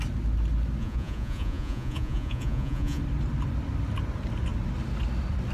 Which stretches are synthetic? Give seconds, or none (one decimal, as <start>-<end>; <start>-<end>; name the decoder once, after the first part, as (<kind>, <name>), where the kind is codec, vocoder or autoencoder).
0.8-3.0 (vocoder, Vocos)

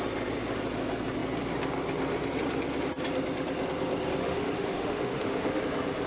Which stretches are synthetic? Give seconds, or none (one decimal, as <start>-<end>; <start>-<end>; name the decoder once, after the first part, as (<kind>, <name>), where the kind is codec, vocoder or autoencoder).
4.2-5.6 (autoencoder, DAC-VAE)

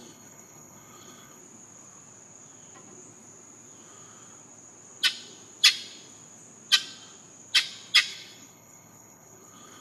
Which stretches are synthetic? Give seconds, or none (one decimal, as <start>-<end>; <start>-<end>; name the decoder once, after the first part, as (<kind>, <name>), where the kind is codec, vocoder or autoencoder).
0.0-1.4 (codec, HILCodec); 8.1-9.8

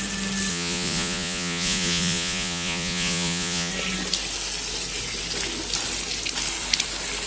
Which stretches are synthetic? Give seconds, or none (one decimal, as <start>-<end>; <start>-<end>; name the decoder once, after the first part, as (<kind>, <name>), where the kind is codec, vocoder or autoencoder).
0.5-3.7 (vocoder, Vocos)

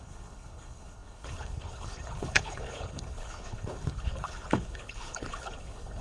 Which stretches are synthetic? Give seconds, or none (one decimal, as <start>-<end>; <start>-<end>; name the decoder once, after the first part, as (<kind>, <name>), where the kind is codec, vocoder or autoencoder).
0.0-6.0 (codec, HILCodec)

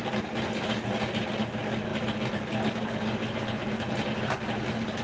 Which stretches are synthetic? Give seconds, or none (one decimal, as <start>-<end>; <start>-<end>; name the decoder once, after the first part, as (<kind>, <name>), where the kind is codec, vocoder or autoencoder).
none

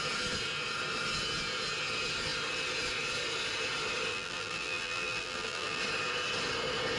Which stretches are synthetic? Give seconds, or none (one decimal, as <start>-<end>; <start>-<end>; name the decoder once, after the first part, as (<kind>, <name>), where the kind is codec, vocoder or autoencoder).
4.1-5.8 (vocoder, BigVGAN v2)

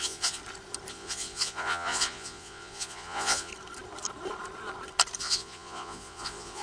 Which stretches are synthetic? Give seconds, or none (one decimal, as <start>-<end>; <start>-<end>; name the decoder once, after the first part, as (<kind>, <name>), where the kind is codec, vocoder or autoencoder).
0.0-0.4 (vocoder, Vocos); 0.9-3.5; 5.2-6.6